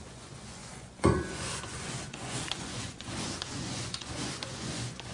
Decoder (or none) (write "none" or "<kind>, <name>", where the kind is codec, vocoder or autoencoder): vocoder, Vocos